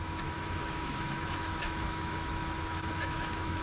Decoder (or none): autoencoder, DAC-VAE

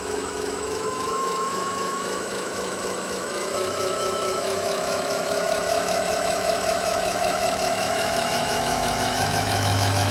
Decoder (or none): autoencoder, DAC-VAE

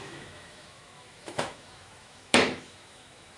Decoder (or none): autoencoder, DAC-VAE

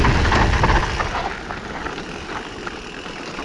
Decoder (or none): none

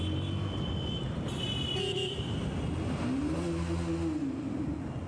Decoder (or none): none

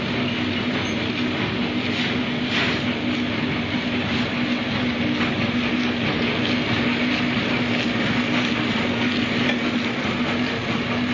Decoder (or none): none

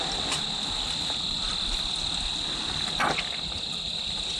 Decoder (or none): none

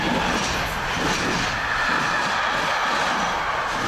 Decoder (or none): none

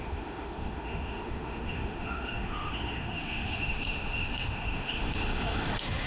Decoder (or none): autoencoder, DAC-VAE